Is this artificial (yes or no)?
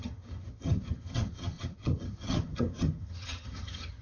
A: yes